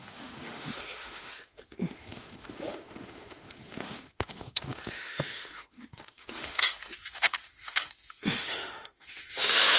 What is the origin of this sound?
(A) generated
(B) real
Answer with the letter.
A